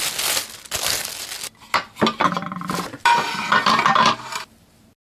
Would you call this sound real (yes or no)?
yes